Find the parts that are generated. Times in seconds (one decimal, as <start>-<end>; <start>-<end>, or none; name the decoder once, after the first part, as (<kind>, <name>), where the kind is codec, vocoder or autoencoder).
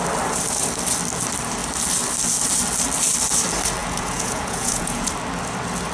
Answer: 3.8-5.1 (vocoder, Vocos)